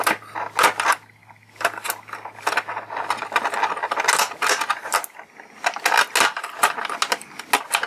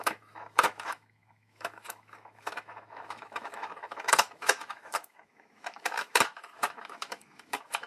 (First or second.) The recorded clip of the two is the first